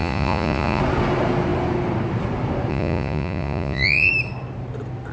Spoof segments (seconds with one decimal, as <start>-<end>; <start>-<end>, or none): 0.0-0.8; 2.7-4.1